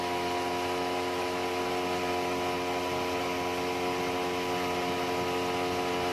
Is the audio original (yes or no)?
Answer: yes